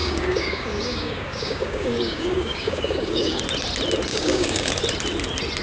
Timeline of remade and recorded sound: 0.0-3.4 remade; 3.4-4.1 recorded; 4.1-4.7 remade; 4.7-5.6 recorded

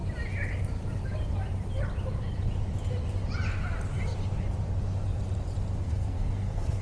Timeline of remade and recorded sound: 0.0-5.8 recorded; 5.8-6.8 remade

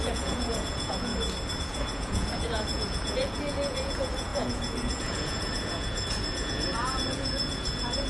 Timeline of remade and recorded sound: 0.0-1.1 remade; 1.1-1.6 recorded; 1.6-8.1 remade